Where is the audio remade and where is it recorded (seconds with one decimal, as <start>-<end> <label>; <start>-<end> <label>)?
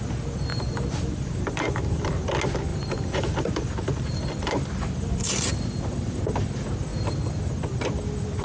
0.0-0.5 recorded; 0.5-2.1 remade; 2.1-2.7 recorded; 2.7-6.2 remade; 6.2-6.9 recorded; 6.9-7.5 remade; 7.5-8.4 recorded